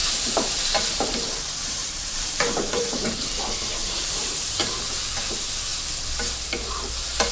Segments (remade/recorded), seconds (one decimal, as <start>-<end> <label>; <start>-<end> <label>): 0.0-3.4 remade; 3.4-3.8 recorded; 3.8-4.7 remade; 4.7-7.3 recorded